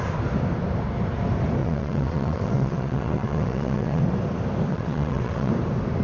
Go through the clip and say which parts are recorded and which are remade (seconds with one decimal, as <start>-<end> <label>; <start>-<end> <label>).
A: 0.0-1.6 recorded; 1.6-4.0 remade; 4.0-4.7 recorded; 4.7-5.5 remade; 5.5-6.0 recorded